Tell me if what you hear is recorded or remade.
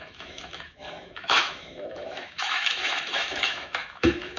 remade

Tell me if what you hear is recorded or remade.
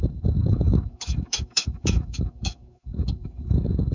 remade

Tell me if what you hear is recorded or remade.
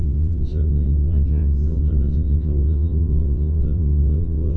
remade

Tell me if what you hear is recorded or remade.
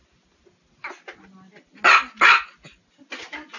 recorded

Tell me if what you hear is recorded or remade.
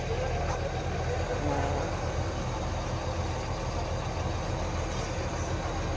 recorded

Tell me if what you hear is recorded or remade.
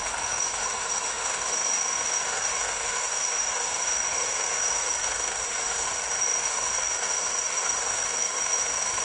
remade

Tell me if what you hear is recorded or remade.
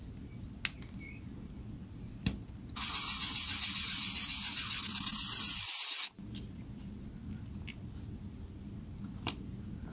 recorded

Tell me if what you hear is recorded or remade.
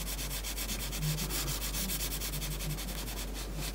recorded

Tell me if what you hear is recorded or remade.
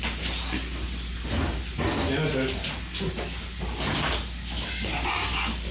recorded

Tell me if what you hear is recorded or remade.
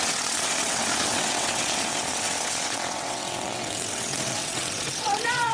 remade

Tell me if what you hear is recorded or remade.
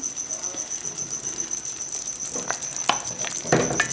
recorded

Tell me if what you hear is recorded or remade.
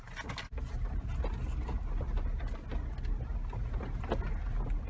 recorded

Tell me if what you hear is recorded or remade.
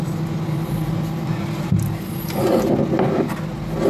recorded